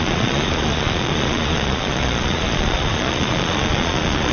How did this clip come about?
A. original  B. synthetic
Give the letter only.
B